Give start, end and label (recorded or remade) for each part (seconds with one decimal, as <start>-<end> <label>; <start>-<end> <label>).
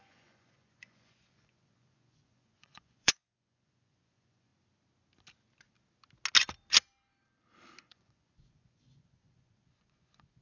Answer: 0.0-4.5 remade; 4.5-7.8 recorded; 7.8-10.4 remade